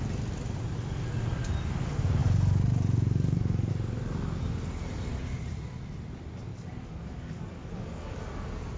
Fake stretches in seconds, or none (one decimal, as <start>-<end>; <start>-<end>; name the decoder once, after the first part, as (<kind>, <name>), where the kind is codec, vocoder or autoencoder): 2.2-3.7 (codec, DAC); 6.5-8.2